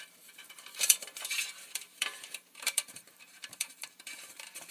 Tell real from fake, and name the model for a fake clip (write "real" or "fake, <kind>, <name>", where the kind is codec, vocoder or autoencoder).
fake, vocoder, BigVGAN v2